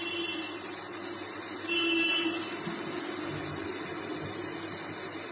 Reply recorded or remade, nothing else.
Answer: recorded